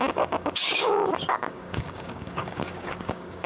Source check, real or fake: fake